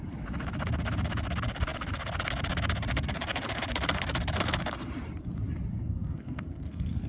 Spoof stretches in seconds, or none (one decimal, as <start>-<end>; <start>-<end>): 5.7-7.1